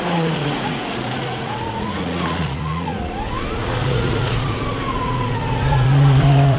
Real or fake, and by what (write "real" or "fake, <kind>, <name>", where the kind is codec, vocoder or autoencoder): fake, vocoder, Vocos